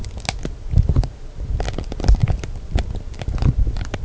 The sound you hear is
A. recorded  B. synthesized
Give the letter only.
A